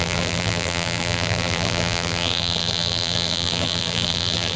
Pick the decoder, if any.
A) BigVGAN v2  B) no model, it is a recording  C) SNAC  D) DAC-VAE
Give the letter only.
A